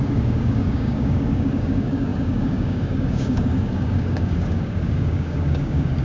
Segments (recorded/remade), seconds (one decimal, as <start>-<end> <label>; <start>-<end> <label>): 0.0-6.0 remade